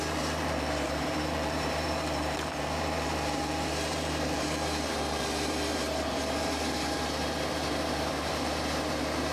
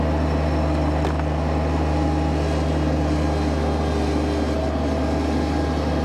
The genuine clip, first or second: second